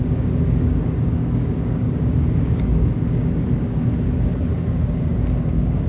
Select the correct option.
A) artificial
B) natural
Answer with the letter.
A